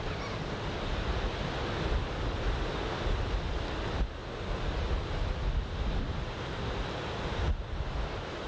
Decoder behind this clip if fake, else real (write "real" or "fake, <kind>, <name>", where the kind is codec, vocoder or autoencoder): real